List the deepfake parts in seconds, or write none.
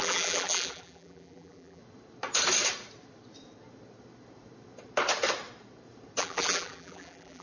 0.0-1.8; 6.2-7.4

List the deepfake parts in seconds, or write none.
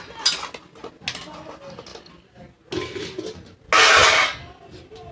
none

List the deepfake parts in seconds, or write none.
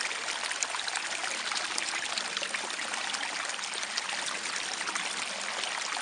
none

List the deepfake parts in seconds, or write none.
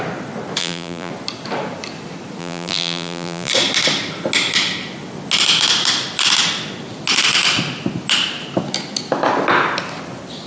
0.6-1.1; 2.4-3.5